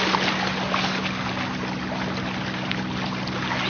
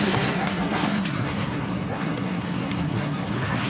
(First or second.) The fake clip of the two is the second